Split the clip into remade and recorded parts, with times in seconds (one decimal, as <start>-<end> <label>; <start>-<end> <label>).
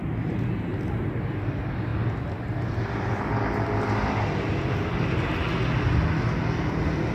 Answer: 0.0-7.1 recorded